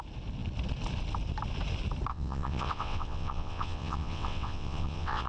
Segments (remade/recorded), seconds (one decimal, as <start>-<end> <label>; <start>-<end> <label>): 0.0-2.1 recorded; 2.1-5.3 remade